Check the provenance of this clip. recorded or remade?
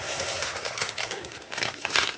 remade